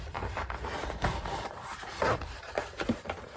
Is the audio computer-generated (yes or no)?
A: yes